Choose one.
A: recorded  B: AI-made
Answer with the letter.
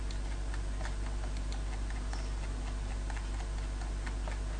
A